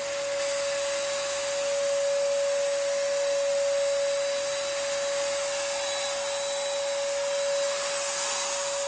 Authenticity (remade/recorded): recorded